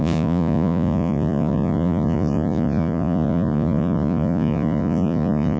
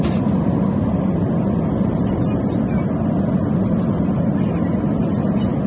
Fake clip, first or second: first